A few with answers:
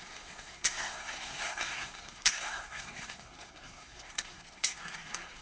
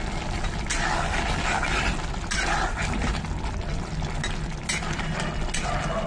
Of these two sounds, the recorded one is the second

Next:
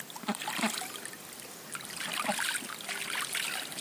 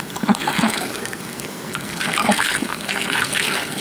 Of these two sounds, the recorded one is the first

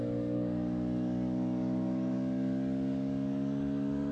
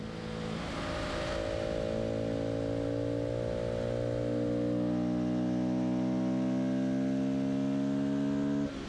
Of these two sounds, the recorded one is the second